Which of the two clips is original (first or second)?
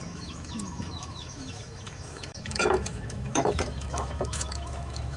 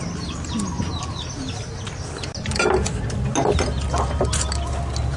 second